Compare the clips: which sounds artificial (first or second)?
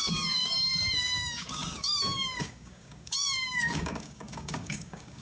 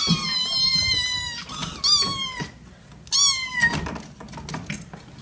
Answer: first